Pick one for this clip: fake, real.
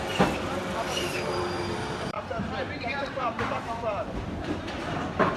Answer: fake